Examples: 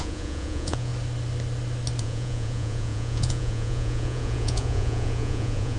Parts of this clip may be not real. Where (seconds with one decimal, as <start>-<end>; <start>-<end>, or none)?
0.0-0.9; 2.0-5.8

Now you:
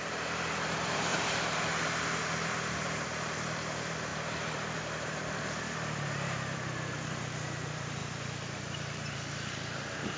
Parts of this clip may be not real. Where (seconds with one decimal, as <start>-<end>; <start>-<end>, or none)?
0.0-10.2

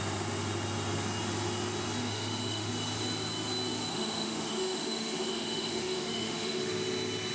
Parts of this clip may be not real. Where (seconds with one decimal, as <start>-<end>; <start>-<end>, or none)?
2.0-2.7; 3.9-6.7